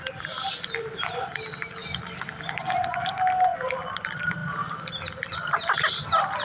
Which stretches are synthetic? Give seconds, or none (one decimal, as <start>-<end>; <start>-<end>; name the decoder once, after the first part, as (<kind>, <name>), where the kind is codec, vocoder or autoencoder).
none